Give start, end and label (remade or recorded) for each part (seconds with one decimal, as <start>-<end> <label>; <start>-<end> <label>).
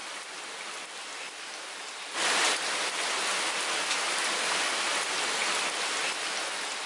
0.0-6.9 recorded